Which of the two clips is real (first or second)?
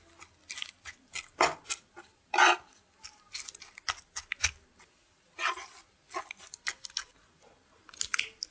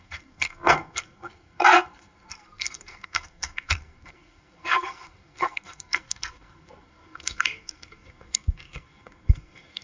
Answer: first